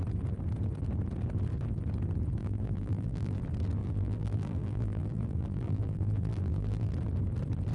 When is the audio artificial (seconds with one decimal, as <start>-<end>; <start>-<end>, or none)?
2.4-3.4; 3.8-6.9

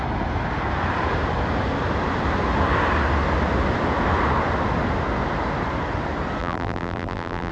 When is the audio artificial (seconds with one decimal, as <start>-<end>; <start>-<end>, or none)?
6.4-7.5